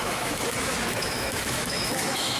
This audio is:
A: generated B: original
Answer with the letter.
A